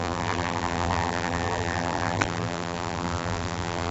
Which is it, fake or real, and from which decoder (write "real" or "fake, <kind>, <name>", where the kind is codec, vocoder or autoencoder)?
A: fake, vocoder, BigVGAN v2